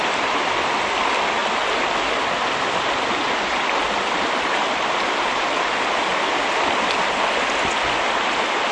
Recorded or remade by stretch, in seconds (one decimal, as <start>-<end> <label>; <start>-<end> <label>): 0.0-8.7 recorded